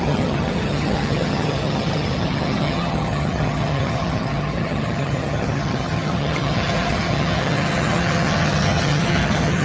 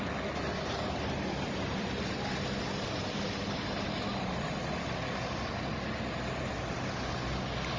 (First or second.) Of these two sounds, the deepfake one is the first